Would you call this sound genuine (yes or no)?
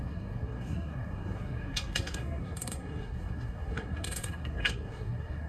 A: no